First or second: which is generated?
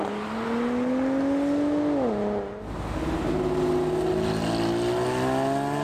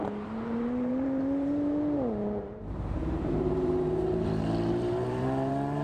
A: second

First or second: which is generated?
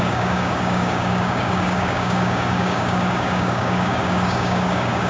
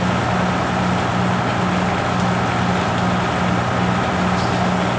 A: first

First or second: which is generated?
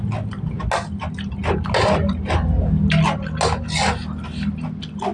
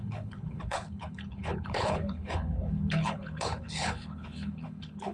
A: second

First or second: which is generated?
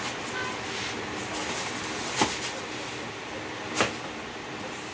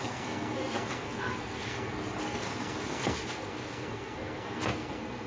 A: second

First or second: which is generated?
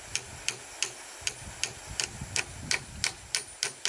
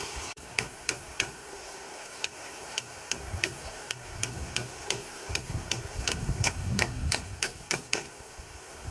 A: second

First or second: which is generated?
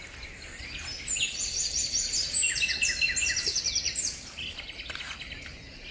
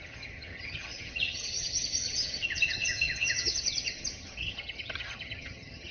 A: second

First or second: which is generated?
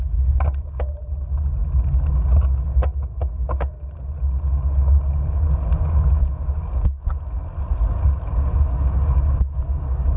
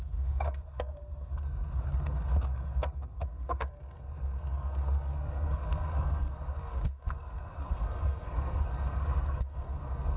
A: second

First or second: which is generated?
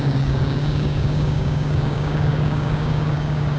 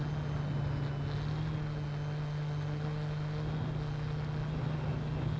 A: first